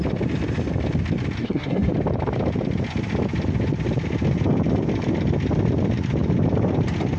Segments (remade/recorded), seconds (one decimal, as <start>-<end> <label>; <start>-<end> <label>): 0.0-1.4 recorded; 1.4-1.9 remade; 1.9-7.2 recorded